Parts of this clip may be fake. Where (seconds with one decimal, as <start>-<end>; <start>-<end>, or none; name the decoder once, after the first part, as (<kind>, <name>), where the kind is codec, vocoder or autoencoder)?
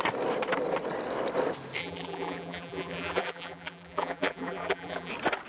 1.8-5.1 (vocoder, BigVGAN v2)